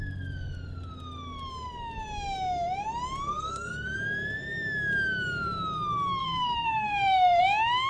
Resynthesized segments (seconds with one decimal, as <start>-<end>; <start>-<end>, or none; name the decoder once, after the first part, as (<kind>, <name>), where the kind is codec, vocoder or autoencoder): 3.2-4.0 (codec, SNAC); 6.2-7.4